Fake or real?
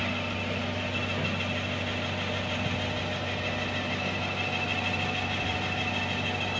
real